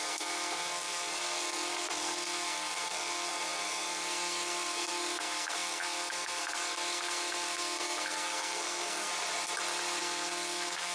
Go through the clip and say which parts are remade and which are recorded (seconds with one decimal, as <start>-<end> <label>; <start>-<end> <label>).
0.0-9.1 remade; 9.1-10.0 recorded; 10.0-10.9 remade